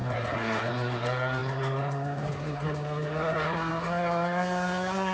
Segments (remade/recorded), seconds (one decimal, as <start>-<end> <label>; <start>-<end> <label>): 0.0-5.1 remade